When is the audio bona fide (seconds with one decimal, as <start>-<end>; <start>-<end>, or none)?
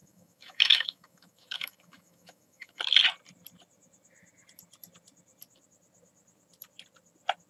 2.8-7.5